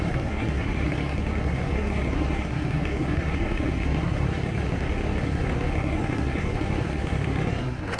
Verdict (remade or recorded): remade